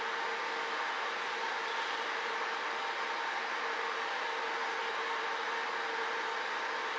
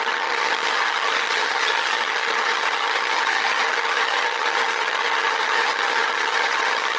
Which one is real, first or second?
first